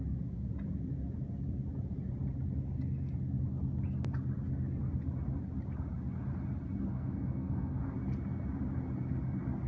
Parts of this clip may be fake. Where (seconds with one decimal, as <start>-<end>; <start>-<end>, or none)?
6.9-7.8